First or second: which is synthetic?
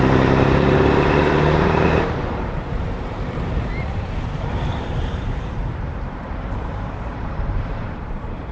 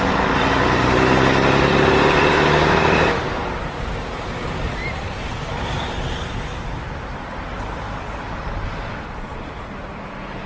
first